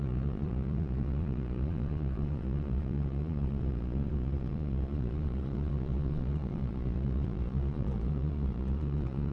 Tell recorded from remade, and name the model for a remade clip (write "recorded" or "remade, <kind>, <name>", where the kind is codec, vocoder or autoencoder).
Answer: remade, vocoder, Vocos